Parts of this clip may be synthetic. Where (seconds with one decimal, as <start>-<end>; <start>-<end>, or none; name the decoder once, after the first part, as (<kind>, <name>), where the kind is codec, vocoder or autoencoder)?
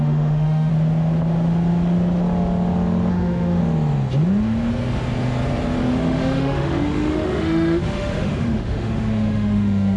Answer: 0.0-0.7 (autoencoder, DAC-VAE); 3.1-3.6; 5.9-10.0